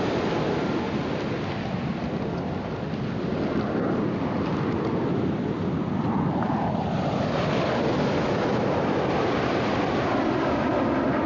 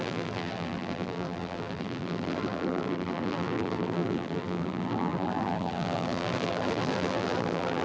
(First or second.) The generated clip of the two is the second